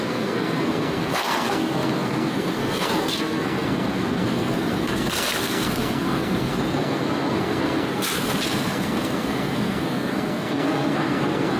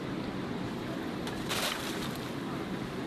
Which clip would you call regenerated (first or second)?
first